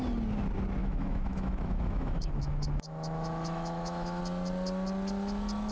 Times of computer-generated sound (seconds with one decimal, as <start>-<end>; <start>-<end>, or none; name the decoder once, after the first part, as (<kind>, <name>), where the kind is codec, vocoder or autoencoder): 0.8-4.2 (autoencoder, DAC-VAE)